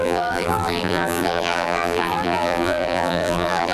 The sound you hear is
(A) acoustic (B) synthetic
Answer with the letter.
B